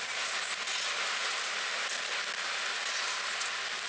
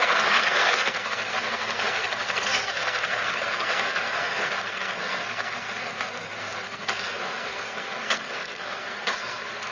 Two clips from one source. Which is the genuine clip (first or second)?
first